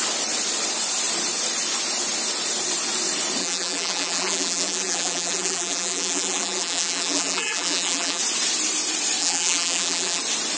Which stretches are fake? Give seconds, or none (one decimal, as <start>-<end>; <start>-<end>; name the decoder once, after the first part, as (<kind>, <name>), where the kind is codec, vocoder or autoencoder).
3.4-8.2 (vocoder, BigVGAN v2); 9.2-10.2